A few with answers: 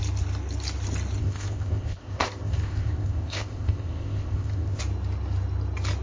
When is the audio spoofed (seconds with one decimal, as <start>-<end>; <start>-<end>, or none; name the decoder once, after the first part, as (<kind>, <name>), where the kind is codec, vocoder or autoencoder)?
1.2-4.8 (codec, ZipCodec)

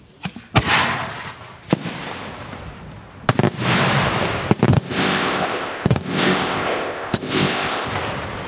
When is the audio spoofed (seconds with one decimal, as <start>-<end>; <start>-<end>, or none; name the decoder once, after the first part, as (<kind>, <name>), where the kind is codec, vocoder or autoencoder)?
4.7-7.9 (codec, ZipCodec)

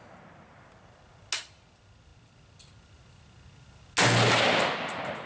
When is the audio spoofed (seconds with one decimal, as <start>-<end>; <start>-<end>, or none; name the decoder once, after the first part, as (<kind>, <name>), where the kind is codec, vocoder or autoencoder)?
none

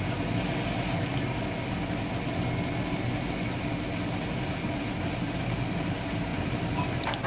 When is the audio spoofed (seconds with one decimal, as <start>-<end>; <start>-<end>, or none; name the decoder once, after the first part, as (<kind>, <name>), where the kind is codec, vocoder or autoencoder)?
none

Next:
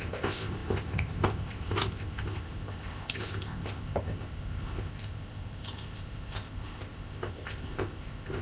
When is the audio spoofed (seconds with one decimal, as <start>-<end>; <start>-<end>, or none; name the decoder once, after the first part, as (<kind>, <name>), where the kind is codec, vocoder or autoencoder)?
0.0-8.4 (codec, ZipCodec)

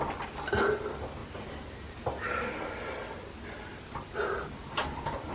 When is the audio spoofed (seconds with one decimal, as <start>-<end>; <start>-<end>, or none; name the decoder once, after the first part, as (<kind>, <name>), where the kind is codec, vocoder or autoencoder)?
none

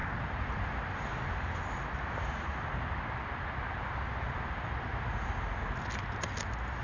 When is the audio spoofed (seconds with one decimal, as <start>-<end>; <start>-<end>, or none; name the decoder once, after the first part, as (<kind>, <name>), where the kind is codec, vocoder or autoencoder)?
none